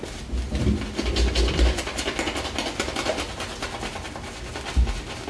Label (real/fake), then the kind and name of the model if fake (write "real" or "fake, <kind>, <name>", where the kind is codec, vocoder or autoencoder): real